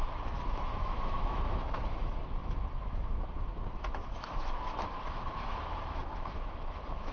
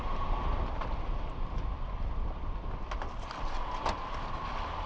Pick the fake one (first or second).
first